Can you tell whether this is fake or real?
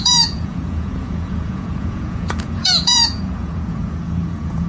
fake